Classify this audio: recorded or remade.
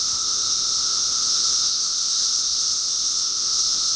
remade